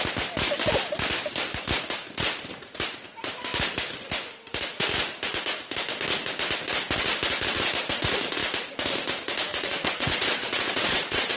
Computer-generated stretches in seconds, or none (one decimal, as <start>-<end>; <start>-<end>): 9.5-11.4

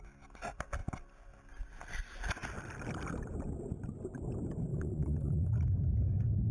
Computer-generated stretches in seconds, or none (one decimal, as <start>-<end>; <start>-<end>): 4.7-5.5

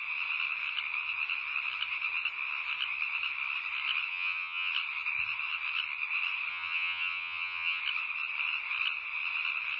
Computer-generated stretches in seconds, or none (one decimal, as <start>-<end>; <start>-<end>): 4.1-4.7; 6.5-7.8

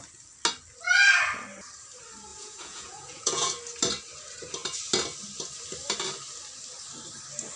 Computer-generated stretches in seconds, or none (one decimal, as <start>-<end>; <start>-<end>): 2.3-3.5

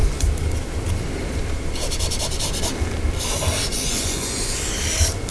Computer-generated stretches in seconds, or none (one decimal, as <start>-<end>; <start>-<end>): 3.7-4.6

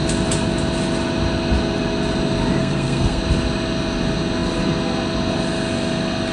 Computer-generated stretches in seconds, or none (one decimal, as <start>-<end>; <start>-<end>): 2.6-3.2